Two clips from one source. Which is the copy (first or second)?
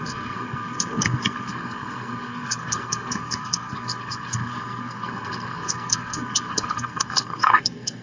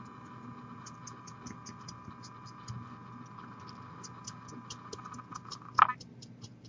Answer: first